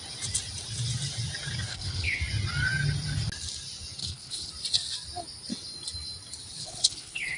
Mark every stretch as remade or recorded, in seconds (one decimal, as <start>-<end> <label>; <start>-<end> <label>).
0.0-1.7 recorded; 1.7-2.2 remade; 2.2-4.0 recorded; 4.0-4.5 remade; 4.5-6.6 recorded; 6.6-7.4 remade